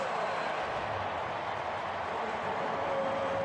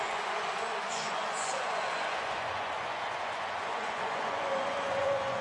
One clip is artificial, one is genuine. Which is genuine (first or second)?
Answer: first